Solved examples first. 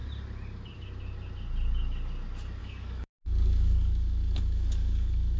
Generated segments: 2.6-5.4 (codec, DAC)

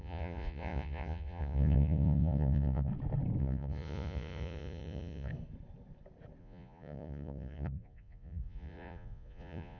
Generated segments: 0.0-2.9 (vocoder, Vocos); 3.4-5.3; 6.4-9.8

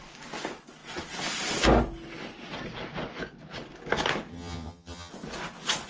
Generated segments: 4.3-5.1 (vocoder, HiFi-GAN)

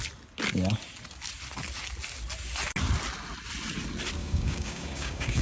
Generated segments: 4.2-5.4 (codec, DAC)